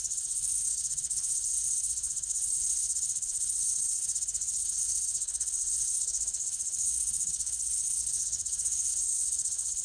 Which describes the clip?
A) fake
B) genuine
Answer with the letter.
A